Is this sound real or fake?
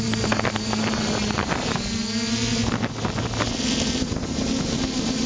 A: real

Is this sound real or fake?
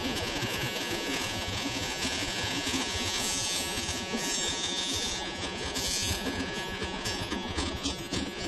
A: fake